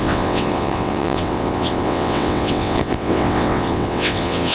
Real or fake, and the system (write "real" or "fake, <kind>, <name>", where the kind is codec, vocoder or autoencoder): fake, vocoder, WaveNeXt